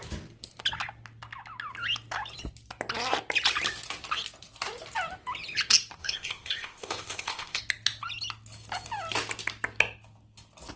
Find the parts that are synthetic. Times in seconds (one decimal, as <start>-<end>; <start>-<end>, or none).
6.0-7.6